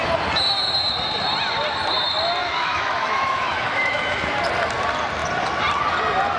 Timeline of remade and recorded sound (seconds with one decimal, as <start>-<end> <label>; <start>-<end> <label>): 0.0-2.4 recorded; 2.4-4.4 remade; 4.4-6.4 recorded